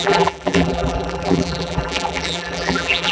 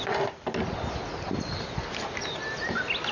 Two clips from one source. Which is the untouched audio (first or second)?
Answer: second